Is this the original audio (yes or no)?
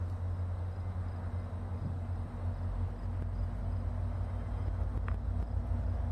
yes